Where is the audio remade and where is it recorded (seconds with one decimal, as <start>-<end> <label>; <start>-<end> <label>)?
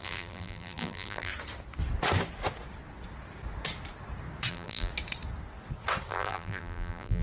0.0-1.3 remade; 1.3-4.5 recorded; 4.5-4.9 remade; 4.9-6.1 recorded; 6.1-7.2 remade